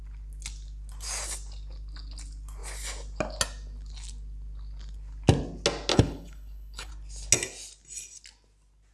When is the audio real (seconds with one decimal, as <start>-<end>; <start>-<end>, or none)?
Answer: 0.0-5.9; 6.9-8.9